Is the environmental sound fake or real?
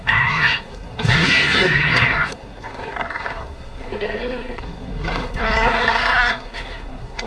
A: fake